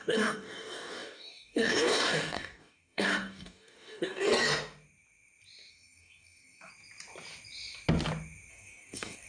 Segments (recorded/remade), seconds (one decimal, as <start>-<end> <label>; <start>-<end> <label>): 0.0-4.3 remade; 4.3-5.7 recorded; 5.7-6.7 remade; 6.7-8.5 recorded; 8.5-9.3 remade